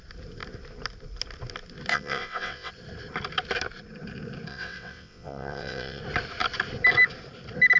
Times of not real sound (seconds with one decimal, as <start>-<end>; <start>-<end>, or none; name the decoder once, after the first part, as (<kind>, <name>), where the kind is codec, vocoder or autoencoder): 1.9-2.7 (vocoder, WaveNeXt); 4.5-6.0